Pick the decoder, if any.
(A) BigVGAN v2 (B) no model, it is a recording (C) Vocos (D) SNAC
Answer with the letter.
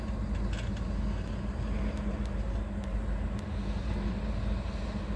B